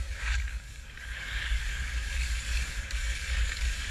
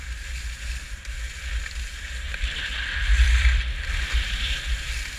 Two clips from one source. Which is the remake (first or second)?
first